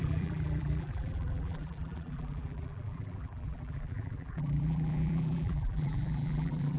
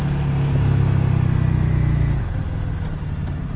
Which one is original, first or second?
second